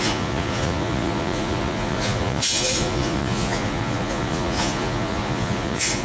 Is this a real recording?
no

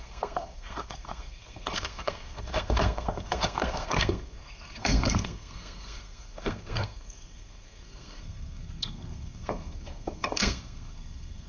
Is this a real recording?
no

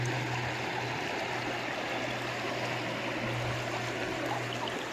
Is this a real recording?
yes